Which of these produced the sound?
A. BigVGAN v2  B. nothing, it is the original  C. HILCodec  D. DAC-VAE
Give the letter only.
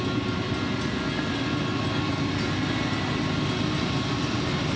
B